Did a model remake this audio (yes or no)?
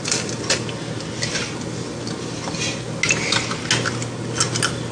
no